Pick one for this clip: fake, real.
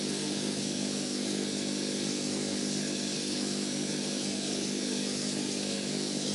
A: fake